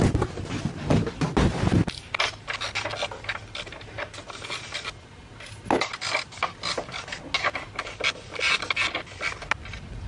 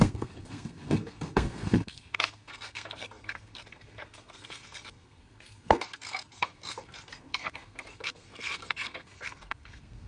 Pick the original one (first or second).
first